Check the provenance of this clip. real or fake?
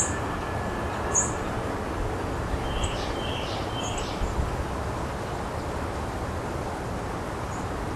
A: real